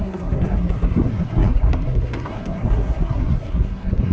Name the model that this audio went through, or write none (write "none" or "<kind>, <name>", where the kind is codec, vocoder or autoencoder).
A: codec, SNAC